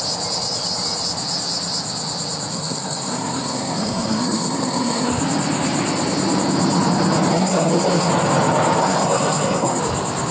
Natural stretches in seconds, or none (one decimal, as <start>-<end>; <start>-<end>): 0.0-2.5; 5.2-7.3; 8.1-8.8; 9.8-10.3